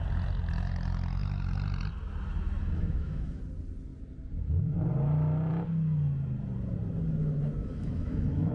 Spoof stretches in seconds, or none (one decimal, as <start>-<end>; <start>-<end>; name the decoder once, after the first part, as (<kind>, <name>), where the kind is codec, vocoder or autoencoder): 2.6-3.4 (autoencoder, DAC-VAE); 7.6-8.5